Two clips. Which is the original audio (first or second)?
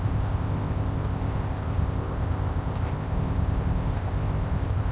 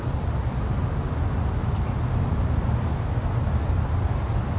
second